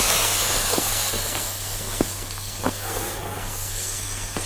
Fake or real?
fake